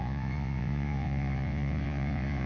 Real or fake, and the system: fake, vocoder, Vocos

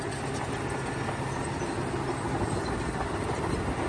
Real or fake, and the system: real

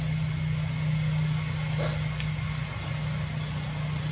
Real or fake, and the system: real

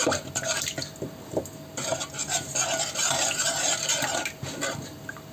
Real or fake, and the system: real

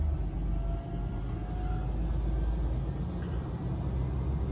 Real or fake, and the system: real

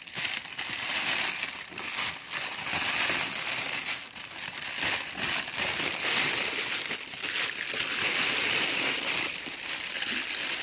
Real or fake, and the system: real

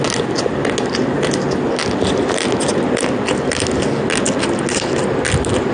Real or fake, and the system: real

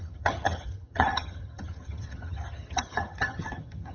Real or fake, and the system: fake, vocoder, HiFi-GAN